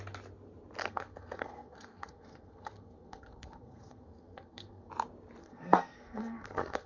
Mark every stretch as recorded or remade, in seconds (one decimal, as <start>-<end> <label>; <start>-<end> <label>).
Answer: 0.0-0.8 recorded; 0.8-4.9 remade; 4.9-5.4 recorded; 5.4-6.9 remade